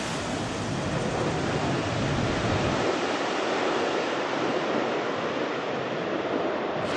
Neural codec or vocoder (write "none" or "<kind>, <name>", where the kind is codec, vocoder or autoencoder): none